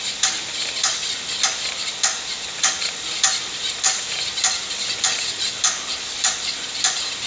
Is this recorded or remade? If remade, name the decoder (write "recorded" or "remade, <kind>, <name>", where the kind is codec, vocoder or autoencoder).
recorded